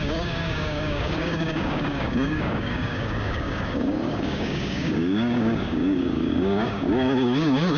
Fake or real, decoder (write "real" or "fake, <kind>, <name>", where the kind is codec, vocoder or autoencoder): fake, codec, DAC